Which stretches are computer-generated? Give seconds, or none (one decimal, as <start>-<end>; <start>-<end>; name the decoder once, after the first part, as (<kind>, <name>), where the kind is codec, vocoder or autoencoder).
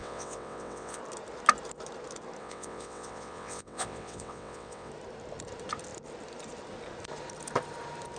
0.0-1.0 (vocoder, WaveNeXt); 2.4-4.9